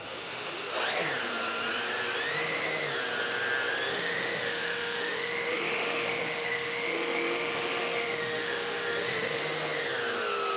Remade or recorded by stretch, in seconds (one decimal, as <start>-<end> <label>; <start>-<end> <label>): 0.0-0.7 remade; 0.7-3.9 recorded; 3.9-9.4 remade; 9.4-10.6 recorded